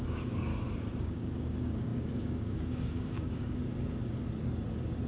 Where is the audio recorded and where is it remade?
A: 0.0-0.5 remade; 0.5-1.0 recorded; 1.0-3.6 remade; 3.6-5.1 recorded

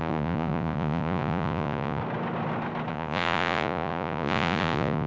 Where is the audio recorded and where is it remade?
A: 0.0-2.0 remade; 2.0-2.9 recorded; 2.9-5.1 remade

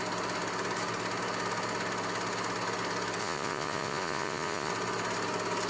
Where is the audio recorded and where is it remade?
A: 0.0-3.2 recorded; 3.2-4.7 remade; 4.7-5.7 recorded